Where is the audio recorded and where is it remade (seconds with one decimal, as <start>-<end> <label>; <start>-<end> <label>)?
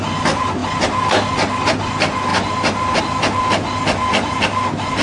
0.0-0.6 recorded; 0.6-1.9 remade; 1.9-2.3 recorded; 2.3-3.0 remade; 3.0-5.0 recorded